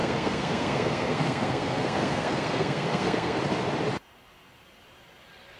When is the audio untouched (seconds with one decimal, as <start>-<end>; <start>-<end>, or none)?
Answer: 3.4-5.6